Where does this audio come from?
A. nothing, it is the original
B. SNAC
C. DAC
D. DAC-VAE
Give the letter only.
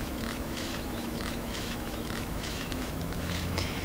D